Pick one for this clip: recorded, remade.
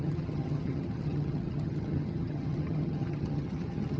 remade